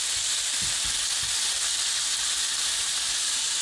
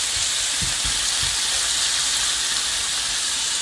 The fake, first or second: first